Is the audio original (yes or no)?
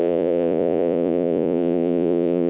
no